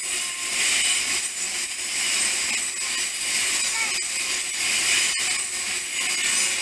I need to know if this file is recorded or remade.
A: recorded